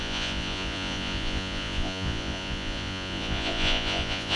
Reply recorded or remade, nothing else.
remade